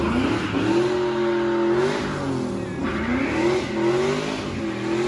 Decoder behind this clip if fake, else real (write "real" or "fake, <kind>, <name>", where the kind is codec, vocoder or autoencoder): real